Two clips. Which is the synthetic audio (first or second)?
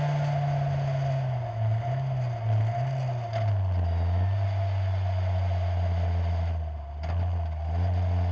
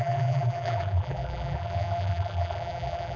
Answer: second